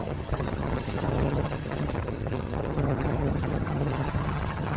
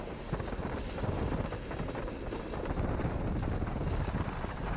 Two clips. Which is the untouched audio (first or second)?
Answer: second